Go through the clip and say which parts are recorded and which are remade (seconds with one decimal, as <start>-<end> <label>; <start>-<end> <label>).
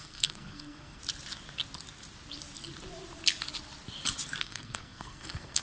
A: 0.0-1.0 remade; 1.0-4.4 recorded; 4.4-5.6 remade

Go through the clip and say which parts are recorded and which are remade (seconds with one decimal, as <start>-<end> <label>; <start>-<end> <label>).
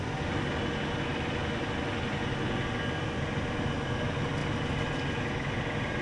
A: 0.0-6.0 recorded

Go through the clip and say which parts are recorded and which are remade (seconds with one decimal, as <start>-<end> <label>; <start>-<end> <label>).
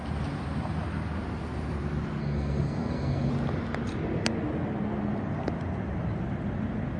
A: 0.0-2.2 recorded; 2.2-3.3 remade; 3.3-7.0 recorded